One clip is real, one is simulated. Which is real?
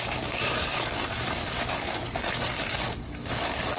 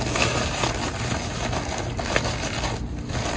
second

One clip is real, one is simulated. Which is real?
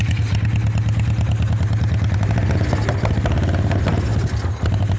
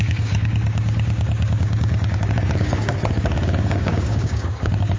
first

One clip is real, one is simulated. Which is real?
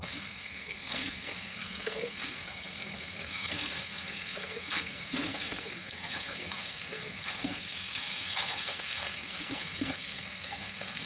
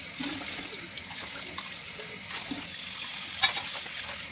second